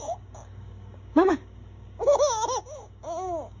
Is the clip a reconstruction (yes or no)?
yes